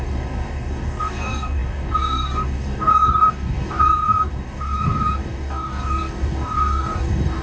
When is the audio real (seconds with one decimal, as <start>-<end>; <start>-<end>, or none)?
none